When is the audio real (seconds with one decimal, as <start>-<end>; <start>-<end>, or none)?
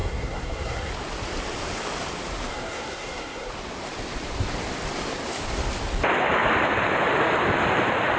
0.9-2.5; 3.5-8.2